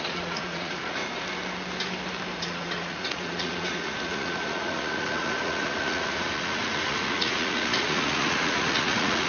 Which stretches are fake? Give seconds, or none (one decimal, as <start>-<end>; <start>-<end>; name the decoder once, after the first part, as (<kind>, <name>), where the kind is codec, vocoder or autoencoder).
0.0-1.0 (vocoder, Vocos); 2.4-9.3